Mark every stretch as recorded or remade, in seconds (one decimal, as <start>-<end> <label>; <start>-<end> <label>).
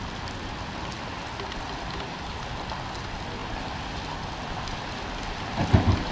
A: 0.0-6.1 recorded